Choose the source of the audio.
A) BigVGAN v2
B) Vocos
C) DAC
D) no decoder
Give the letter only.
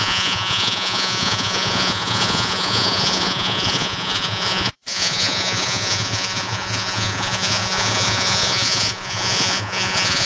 B